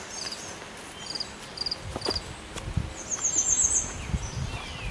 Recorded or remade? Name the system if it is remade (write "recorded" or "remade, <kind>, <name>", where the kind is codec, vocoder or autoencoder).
recorded